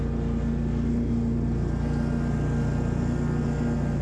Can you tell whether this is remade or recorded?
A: recorded